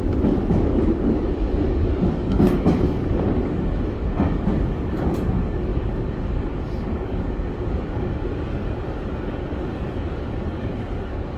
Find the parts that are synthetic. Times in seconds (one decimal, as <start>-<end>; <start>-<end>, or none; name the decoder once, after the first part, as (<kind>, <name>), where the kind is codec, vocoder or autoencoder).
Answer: 0.0-11.4 (codec, DAC)